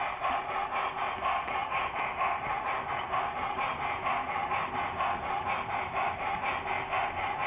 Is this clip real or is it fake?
real